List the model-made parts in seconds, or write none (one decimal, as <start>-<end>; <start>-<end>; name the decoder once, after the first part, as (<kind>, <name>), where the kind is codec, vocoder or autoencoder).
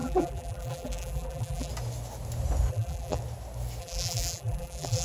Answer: 0.0-1.7 (vocoder, BigVGAN v2); 2.7-3.2; 3.8-5.0